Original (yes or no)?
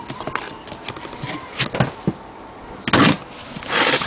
yes